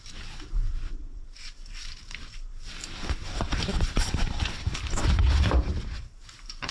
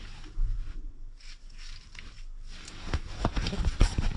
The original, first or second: second